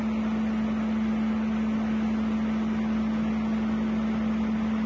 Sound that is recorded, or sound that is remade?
recorded